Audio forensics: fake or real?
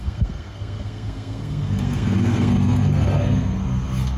fake